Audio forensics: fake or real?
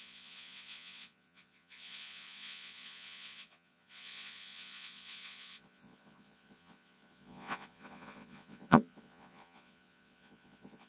fake